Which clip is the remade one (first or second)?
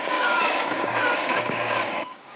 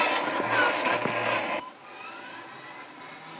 first